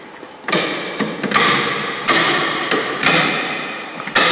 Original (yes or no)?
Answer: yes